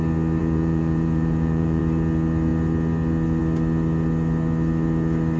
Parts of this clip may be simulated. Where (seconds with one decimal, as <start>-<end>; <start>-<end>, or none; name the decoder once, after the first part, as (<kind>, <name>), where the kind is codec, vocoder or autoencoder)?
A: 0.4-1.8 (vocoder, Vocos)